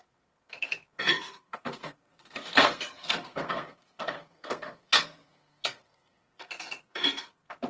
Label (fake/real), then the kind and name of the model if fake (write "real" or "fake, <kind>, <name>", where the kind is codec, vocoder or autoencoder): fake, codec, SNAC